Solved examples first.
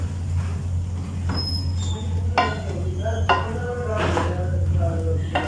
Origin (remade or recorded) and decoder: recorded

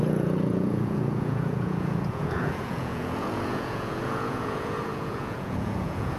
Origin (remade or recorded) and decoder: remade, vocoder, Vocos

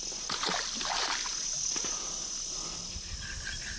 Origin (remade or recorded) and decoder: recorded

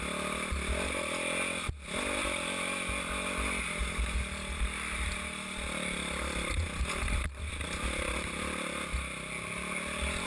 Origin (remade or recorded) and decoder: recorded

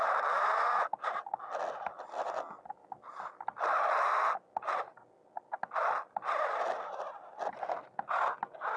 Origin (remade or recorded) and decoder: recorded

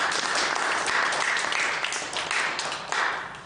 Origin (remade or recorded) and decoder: recorded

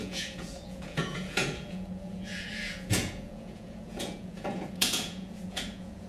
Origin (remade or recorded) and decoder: remade, vocoder, Vocos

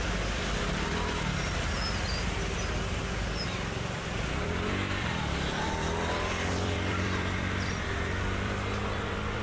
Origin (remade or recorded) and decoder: remade, vocoder, BigVGAN v2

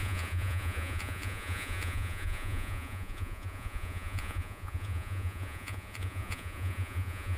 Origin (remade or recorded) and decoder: remade, vocoder, Vocos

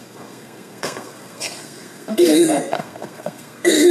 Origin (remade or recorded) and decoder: remade, codec, SNAC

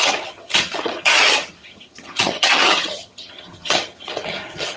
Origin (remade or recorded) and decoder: remade, vocoder, HiFi-GAN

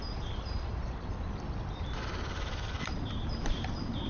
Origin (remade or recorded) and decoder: recorded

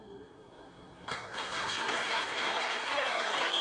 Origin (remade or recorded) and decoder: remade, codec, SNAC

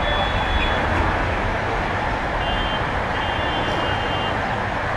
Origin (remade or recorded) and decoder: recorded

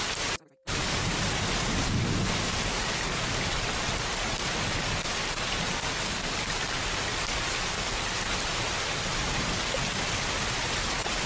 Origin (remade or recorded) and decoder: recorded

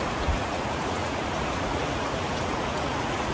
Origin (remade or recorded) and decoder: remade, vocoder, Vocos